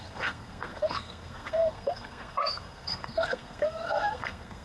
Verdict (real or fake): fake